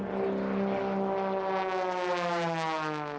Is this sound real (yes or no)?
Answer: yes